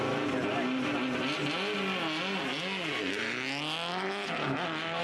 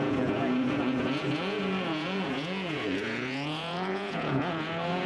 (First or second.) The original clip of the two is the first